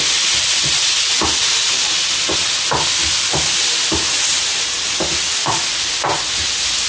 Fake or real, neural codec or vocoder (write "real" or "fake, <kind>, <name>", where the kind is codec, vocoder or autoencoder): real